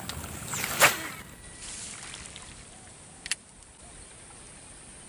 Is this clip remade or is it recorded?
recorded